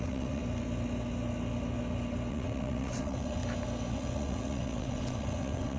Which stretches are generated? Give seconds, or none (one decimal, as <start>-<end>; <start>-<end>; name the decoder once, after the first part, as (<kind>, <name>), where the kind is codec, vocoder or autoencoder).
0.0-0.4 (vocoder, WaveNeXt); 2.3-3.4; 3.9-5.8